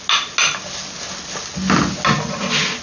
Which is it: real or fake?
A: real